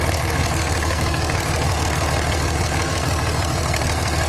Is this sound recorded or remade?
remade